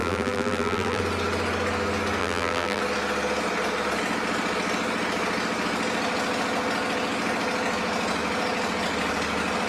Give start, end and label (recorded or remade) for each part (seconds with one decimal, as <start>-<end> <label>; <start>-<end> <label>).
0.0-1.0 remade; 1.0-2.2 recorded; 2.2-2.8 remade; 2.8-9.7 recorded